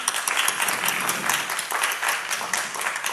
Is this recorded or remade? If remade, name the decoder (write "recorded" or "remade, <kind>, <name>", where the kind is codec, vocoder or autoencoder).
recorded